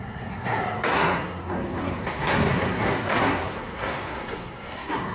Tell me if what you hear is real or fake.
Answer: fake